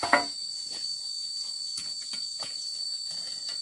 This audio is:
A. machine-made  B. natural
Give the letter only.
A